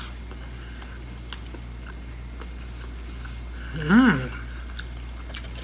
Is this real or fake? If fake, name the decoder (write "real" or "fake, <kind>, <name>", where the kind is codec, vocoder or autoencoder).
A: real